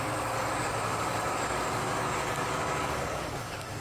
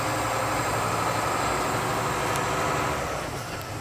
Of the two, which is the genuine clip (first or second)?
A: second